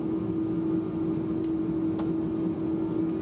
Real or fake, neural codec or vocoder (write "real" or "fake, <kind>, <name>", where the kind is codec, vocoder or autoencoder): real